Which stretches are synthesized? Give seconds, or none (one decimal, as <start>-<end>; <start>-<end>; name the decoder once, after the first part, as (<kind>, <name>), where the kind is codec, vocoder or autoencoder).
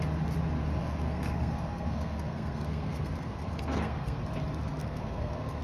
0.8-4.2 (codec, SNAC); 4.8-5.6